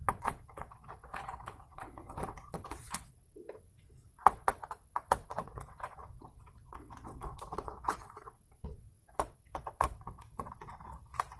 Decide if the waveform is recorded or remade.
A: remade